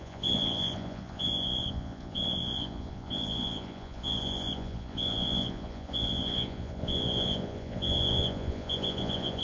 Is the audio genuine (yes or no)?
no